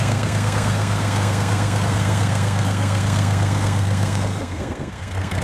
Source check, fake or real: fake